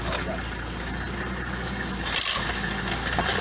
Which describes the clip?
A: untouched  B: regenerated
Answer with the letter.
A